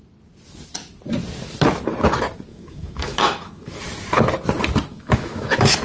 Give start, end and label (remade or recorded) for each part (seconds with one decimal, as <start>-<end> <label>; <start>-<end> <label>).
0.0-2.5 recorded; 2.5-3.8 remade; 3.8-4.9 recorded; 4.9-5.8 remade